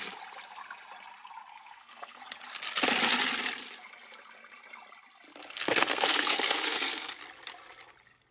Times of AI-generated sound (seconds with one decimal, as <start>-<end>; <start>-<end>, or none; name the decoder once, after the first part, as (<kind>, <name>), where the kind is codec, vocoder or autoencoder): 1.5-2.2 (codec, SNAC); 5.5-7.2